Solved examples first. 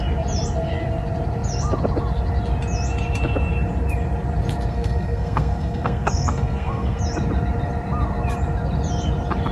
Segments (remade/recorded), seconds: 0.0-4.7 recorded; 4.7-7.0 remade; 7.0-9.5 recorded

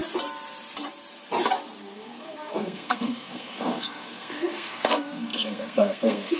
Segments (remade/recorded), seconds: 0.0-1.8 recorded; 1.8-6.4 remade